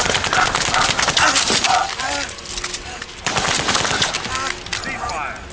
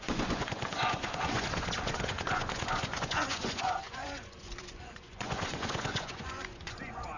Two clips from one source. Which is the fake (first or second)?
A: second